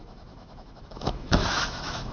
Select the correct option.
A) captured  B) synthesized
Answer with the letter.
B